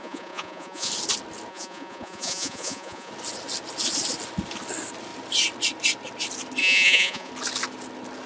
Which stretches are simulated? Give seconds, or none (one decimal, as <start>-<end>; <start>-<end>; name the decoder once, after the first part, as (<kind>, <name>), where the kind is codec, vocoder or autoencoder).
0.0-0.9 (vocoder, Vocos); 1.5-3.1; 6.6-7.3